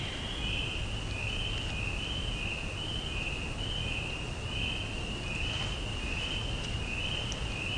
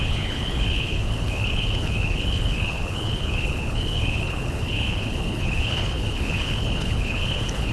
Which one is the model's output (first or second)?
second